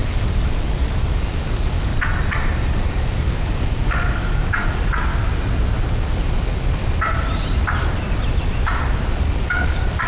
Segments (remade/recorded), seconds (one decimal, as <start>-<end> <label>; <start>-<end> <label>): 0.0-1.9 remade; 1.9-2.7 recorded; 2.7-5.1 remade; 5.1-6.0 recorded; 6.0-6.8 remade; 6.8-9.2 recorded; 9.2-10.1 remade